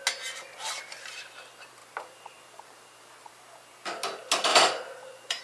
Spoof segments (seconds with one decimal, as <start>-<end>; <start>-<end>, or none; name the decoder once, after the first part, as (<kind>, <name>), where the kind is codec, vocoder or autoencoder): 1.8-3.3 (vocoder, BigVGAN v2); 4.5-5.4